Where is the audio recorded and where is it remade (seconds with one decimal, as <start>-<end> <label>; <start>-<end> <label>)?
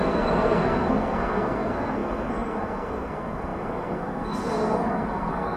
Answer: 0.0-5.6 remade